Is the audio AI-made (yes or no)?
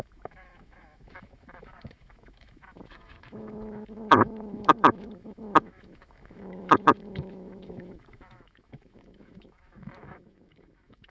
yes